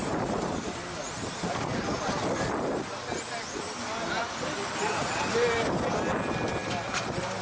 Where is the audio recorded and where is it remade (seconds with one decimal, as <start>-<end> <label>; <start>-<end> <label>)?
0.0-6.6 recorded; 6.6-7.4 remade